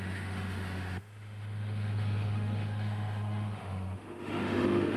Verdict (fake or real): fake